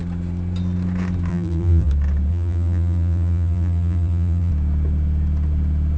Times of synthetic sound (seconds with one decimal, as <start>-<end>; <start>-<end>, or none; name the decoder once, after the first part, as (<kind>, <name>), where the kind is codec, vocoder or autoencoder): 1.3-1.9 (vocoder, BigVGAN v2); 2.3-4.5